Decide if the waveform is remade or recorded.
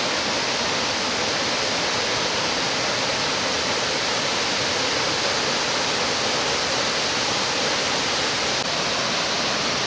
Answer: recorded